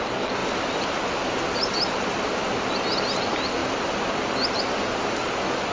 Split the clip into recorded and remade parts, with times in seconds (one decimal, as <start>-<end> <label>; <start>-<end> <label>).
0.0-5.7 recorded